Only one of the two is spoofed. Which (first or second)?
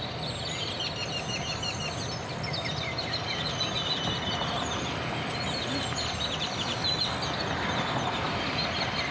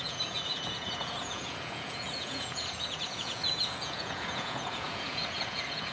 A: second